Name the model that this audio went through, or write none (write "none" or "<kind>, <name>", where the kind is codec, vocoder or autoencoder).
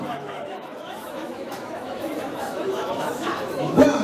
autoencoder, DAC-VAE